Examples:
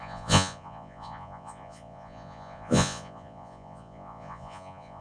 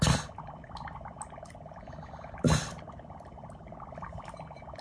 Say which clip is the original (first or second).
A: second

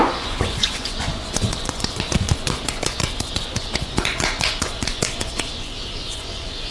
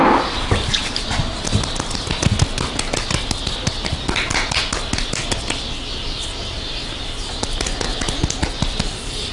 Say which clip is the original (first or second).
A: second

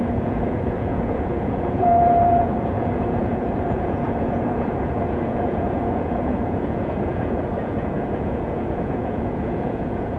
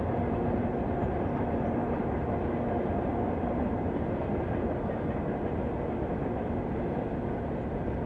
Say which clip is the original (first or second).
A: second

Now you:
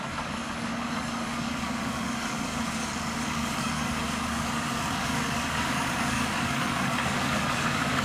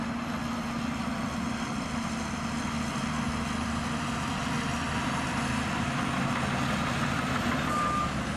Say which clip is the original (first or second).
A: second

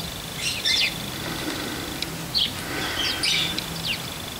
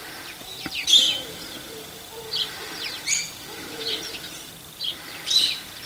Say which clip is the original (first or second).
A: first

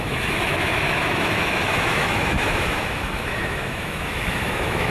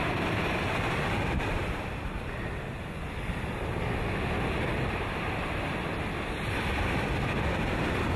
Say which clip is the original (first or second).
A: second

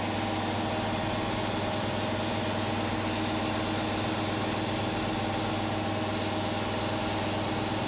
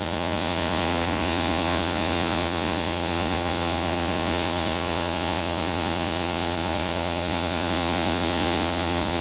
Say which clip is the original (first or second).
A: first